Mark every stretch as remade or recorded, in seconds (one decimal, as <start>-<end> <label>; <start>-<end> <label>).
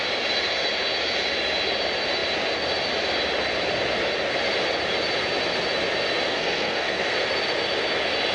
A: 0.0-6.3 recorded; 6.3-7.3 remade; 7.3-8.3 recorded